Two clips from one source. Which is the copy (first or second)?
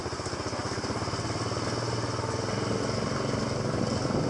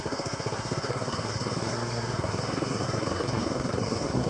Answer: second